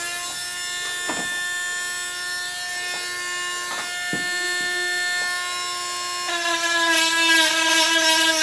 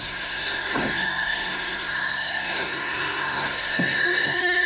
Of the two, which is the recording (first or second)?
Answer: first